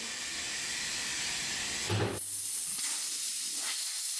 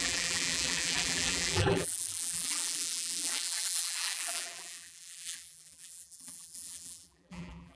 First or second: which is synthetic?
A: second